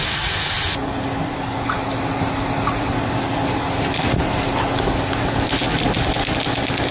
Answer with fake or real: real